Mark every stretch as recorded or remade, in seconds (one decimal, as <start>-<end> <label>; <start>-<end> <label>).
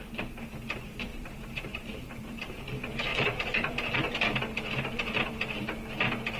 0.0-1.1 recorded; 1.1-2.6 remade; 2.6-3.1 recorded; 3.1-4.1 remade; 4.1-6.4 recorded